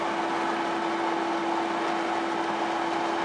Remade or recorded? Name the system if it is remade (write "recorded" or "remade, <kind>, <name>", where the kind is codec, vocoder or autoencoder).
recorded